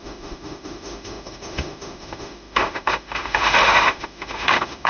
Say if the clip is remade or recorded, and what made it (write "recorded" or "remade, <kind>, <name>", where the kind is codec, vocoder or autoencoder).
remade, autoencoder, DAC-VAE